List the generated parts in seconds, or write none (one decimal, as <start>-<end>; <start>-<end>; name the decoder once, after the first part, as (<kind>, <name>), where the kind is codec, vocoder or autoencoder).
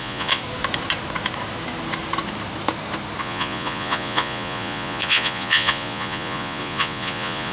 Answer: 0.0-0.4 (vocoder, Vocos); 3.2-7.5